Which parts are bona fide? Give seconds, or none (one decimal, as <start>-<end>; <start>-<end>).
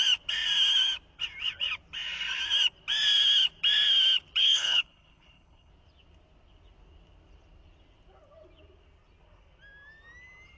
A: 0.0-4.4; 5.7-10.6